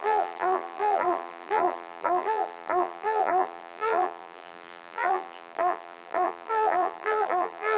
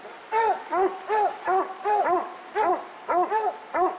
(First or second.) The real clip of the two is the second